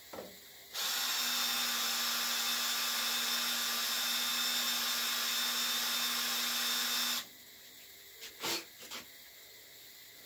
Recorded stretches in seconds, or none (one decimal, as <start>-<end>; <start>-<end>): 0.0-10.3